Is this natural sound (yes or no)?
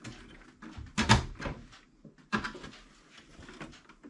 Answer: yes